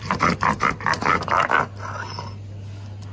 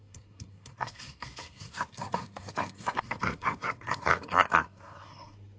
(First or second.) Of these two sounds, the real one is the first